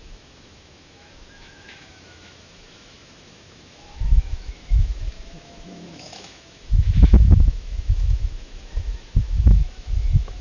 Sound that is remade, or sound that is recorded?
remade